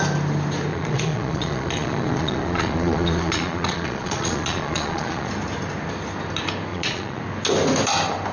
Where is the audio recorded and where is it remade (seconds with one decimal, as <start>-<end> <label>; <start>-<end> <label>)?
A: 0.0-0.7 recorded; 0.7-5.3 remade; 5.3-6.7 recorded; 6.7-7.2 remade; 7.2-8.3 recorded